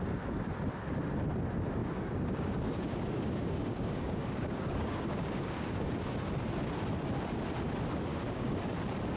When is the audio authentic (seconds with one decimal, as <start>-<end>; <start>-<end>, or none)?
0.0-1.8; 5.9-8.1; 8.6-9.2